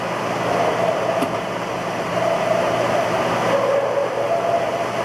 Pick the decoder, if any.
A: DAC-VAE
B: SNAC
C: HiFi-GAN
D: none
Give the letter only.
D